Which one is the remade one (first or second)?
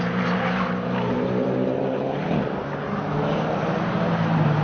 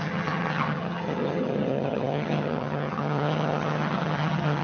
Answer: second